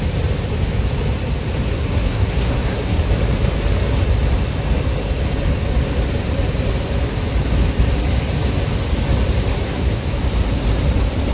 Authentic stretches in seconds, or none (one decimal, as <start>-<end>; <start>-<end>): 0.0-1.7; 3.1-9.5; 10.0-11.3